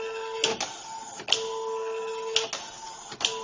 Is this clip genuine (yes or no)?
yes